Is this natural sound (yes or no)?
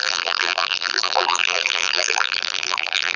no